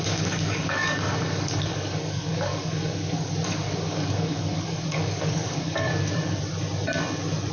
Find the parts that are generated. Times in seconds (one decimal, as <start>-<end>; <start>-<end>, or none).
0.0-5.9